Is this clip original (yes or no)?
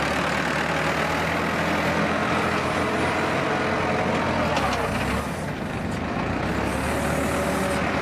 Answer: yes